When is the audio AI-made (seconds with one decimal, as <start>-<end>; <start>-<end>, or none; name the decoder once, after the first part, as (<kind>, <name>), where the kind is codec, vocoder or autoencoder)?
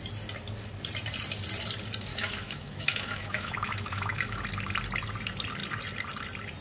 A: 2.1-4.4 (autoencoder, DAC-VAE)